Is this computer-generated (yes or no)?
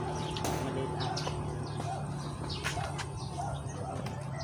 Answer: no